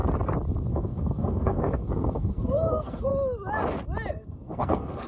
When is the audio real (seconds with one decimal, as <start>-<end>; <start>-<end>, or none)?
0.0-0.7; 3.1-4.1